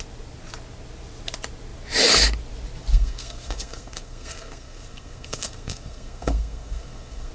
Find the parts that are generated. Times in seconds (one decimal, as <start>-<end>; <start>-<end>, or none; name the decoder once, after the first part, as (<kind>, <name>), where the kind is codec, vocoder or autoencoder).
2.9-7.3 (codec, SNAC)